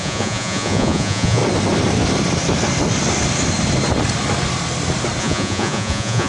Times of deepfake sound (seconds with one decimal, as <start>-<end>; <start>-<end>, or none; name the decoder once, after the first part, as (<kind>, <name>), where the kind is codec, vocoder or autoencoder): 0.0-1.4 (vocoder, Vocos); 5.2-6.3